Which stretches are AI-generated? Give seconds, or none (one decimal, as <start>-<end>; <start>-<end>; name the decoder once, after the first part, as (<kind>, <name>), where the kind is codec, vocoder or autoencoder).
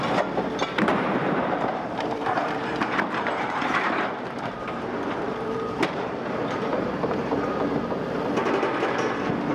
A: 0.9-6.1 (vocoder, BigVGAN v2); 6.7-7.3